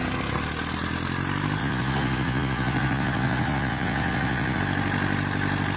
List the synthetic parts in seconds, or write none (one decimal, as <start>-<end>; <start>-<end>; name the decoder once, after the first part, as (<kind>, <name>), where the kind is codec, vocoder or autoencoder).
1.6-4.6 (vocoder, Vocos)